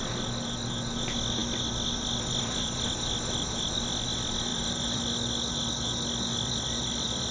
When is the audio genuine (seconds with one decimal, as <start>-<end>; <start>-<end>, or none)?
0.0-1.4; 3.2-4.5; 5.0-6.3